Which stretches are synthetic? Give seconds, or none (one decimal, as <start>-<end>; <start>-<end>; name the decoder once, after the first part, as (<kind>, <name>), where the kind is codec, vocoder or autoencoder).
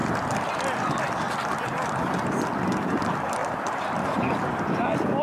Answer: none